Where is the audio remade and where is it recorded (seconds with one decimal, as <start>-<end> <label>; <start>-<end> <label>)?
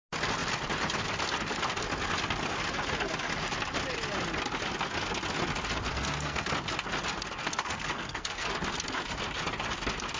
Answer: 0.0-5.9 recorded; 5.9-6.5 remade; 6.5-7.4 recorded; 7.4-8.5 remade; 8.5-10.2 recorded